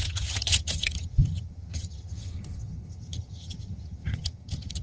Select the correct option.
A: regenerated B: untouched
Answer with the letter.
A